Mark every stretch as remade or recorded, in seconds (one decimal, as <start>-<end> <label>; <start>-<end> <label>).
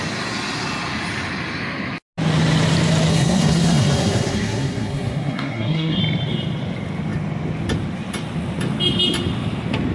0.0-3.1 recorded; 3.1-6.0 remade; 6.0-9.9 recorded